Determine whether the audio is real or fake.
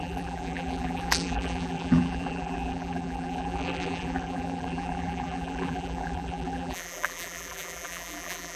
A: fake